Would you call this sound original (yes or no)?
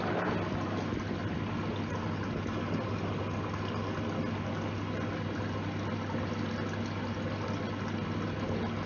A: yes